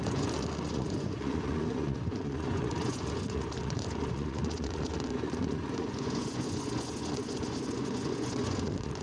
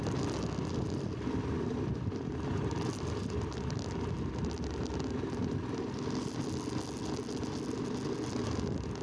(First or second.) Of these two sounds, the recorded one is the second